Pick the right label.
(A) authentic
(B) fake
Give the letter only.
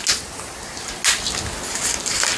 A